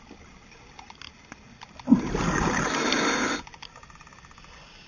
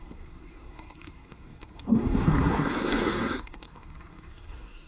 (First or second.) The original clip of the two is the first